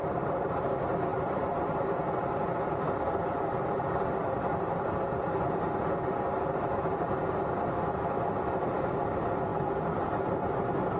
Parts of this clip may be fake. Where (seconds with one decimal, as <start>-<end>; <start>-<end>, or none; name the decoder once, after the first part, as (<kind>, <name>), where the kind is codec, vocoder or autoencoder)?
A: 0.0-0.6 (vocoder, BigVGAN v2); 1.1-5.2; 9.5-10.5